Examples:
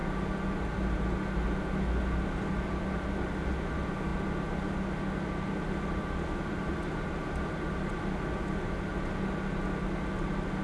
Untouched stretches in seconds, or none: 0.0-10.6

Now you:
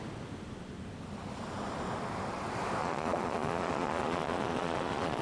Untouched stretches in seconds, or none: 0.0-2.8

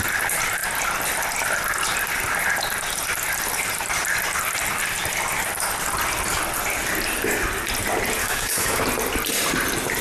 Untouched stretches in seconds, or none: 0.0-8.2; 8.8-10.0

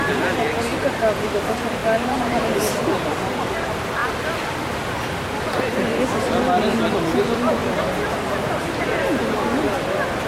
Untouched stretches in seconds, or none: 0.0-1.8; 2.6-7.6; 8.5-10.3

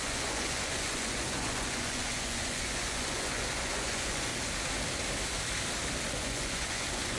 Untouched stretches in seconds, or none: 4.3-6.1

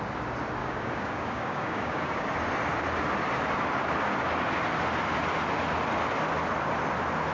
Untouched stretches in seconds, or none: 0.0-0.6; 2.3-7.3

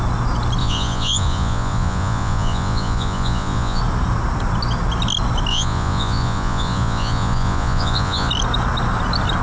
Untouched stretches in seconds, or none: 0.0-0.6; 3.8-5.5; 8.3-9.4